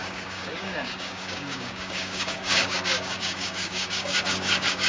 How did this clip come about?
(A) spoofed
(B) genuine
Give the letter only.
A